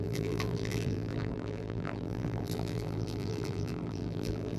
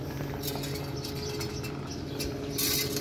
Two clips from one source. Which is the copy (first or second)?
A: first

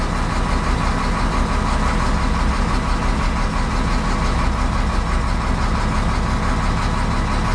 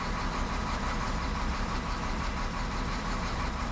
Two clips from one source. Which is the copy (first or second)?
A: second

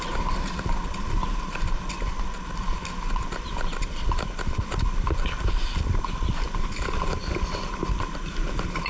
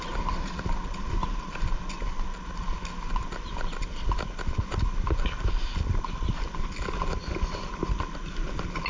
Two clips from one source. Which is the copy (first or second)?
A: first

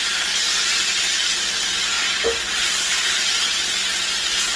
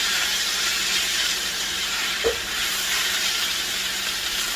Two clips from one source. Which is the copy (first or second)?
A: second